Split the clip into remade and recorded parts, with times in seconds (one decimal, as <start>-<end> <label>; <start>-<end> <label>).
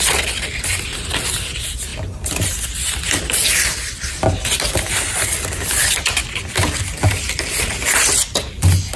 0.0-9.0 recorded